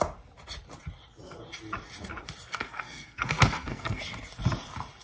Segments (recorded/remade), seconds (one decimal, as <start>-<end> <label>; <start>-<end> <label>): 0.0-2.5 recorded; 2.5-4.0 remade; 4.0-5.0 recorded